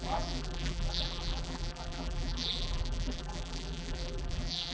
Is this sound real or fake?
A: fake